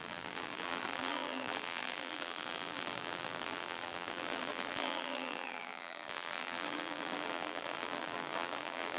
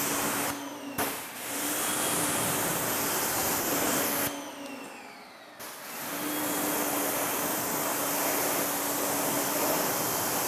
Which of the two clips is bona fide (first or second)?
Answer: second